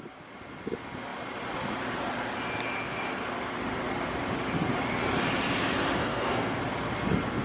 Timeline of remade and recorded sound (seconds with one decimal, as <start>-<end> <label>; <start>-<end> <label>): 0.0-6.0 recorded; 6.0-6.6 remade; 6.6-7.4 recorded